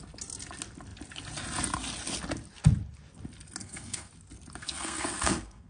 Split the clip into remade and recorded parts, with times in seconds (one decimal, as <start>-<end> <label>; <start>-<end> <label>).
0.0-3.6 recorded; 3.6-4.1 remade; 4.1-4.6 recorded; 4.6-5.7 remade